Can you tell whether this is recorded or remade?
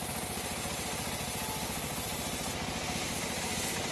recorded